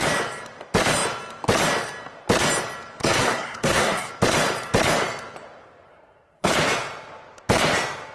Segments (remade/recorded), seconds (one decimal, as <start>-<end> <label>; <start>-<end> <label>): 0.0-3.0 recorded; 3.0-4.1 remade; 4.1-5.9 recorded; 5.9-6.5 remade; 6.5-8.1 recorded